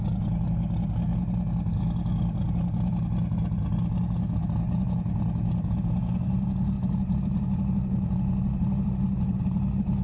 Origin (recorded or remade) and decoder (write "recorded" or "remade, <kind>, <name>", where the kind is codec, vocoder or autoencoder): recorded